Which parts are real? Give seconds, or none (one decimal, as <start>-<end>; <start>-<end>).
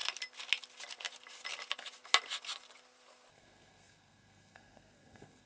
0.0-3.3